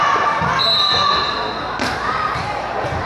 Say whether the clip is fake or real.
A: real